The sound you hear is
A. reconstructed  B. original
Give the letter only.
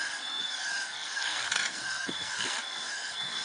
A